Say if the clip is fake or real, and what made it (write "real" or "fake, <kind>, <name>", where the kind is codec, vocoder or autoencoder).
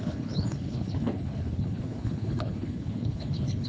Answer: fake, codec, HILCodec